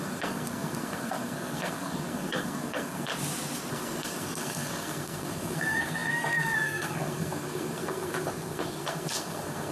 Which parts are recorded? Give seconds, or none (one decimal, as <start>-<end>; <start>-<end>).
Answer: 3.1-3.7